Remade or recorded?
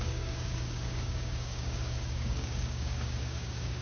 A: remade